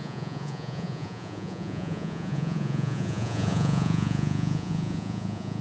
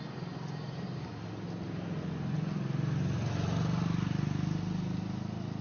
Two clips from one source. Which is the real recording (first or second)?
second